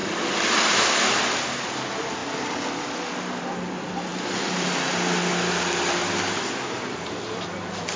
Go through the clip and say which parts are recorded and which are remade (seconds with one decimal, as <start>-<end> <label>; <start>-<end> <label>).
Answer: 0.0-8.0 recorded